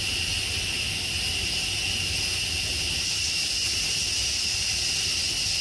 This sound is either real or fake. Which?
real